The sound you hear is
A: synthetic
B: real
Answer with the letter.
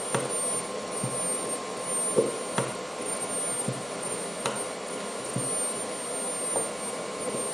B